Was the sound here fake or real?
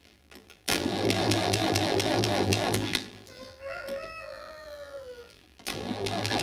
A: fake